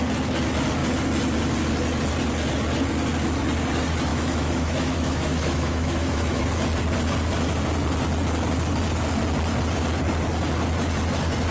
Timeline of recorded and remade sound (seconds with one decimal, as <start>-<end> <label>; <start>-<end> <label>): 0.0-4.1 recorded; 4.1-6.4 remade; 6.4-11.5 recorded